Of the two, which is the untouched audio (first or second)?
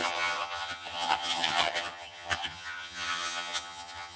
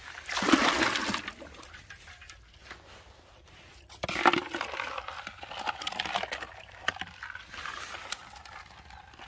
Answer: second